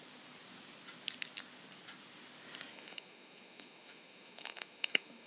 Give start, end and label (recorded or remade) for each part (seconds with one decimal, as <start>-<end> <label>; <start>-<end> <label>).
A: 0.0-2.7 recorded; 2.7-5.3 remade